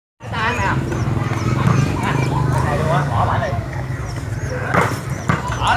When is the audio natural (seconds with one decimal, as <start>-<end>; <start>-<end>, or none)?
0.0-2.7; 3.9-5.8